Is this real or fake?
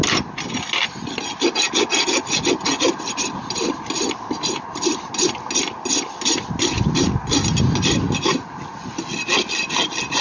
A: real